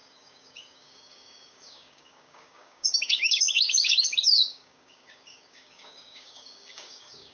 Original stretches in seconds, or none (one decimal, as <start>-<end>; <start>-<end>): none